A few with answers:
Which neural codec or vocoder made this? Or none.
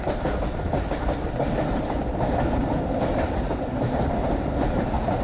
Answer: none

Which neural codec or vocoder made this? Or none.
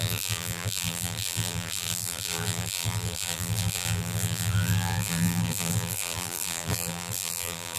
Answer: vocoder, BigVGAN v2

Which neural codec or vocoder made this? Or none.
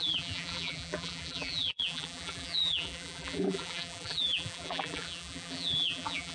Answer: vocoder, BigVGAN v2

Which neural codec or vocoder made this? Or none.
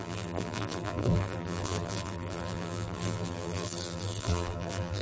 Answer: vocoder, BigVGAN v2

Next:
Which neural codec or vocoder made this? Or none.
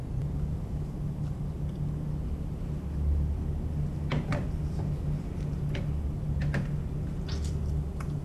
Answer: none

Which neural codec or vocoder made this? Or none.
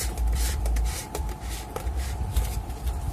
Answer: vocoder, BigVGAN v2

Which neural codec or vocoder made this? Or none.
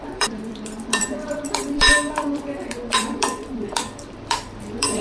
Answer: vocoder, BigVGAN v2